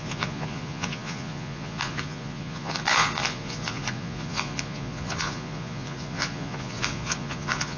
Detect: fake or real fake